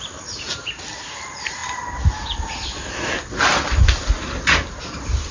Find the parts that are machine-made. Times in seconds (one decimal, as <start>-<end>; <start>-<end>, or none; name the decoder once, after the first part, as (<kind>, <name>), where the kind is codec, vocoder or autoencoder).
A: none